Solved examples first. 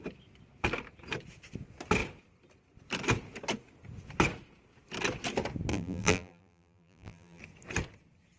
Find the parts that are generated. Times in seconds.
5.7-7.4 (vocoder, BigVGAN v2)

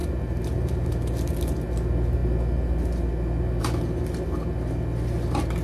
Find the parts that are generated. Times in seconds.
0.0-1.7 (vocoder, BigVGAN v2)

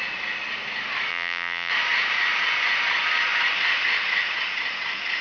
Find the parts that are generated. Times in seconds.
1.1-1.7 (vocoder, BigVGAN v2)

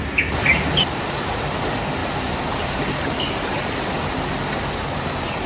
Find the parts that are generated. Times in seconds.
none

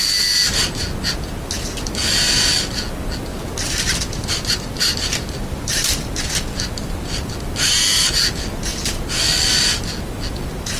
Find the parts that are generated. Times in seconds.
3.3-7.3 (vocoder, BigVGAN v2)

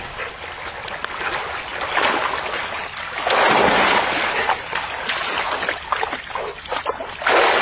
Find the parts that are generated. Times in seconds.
1.7-4.0 (vocoder, BigVGAN v2)

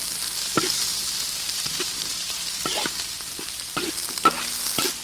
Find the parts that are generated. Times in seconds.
0.9-3.9 (vocoder, BigVGAN v2)